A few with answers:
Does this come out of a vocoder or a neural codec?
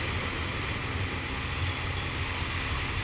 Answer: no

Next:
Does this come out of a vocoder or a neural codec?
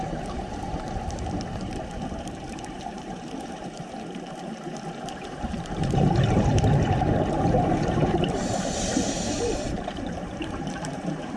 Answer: yes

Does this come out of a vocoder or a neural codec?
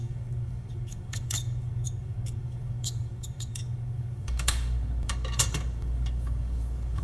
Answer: yes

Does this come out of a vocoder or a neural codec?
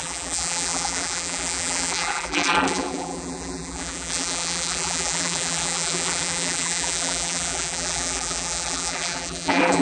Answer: yes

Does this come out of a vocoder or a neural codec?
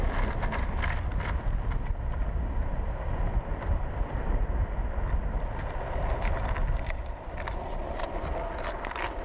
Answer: no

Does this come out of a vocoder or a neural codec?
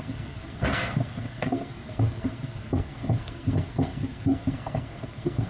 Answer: yes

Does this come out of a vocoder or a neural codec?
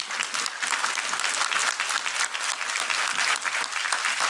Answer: no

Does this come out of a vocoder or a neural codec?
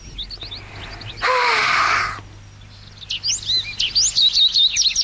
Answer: no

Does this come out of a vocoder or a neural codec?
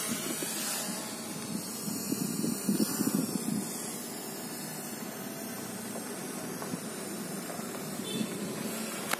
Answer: no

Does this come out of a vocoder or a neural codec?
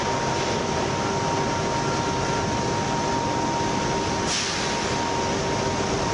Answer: no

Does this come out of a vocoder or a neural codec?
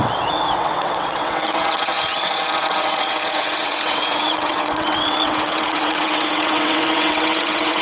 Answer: yes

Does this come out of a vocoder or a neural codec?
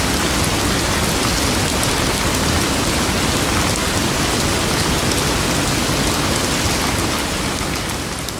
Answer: no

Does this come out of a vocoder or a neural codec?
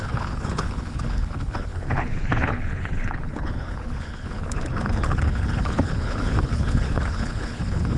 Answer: yes